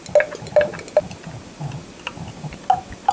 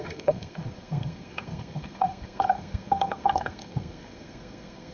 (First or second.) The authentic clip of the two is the first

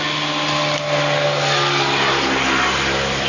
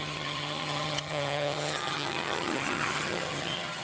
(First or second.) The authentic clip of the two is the first